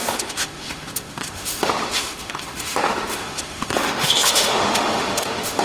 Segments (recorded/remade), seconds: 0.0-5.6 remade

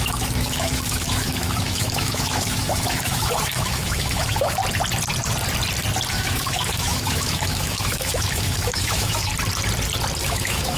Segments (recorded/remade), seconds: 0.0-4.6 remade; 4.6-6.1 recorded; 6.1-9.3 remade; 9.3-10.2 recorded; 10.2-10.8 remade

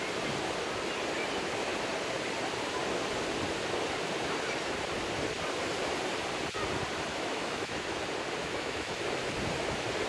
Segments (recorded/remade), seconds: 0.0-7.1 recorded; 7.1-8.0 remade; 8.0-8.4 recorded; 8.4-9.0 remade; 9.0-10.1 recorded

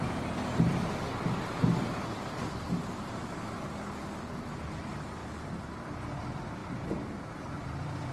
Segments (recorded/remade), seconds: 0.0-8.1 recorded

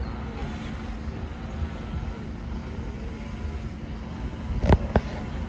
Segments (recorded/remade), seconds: 0.0-5.5 recorded

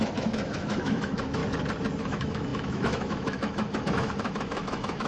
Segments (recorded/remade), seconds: 0.0-1.4 remade; 1.4-2.0 recorded; 2.0-5.1 remade